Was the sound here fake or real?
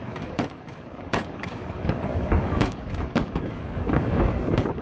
fake